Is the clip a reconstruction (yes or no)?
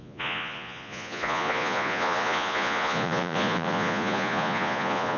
yes